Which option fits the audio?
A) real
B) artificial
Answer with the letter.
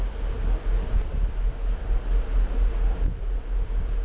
A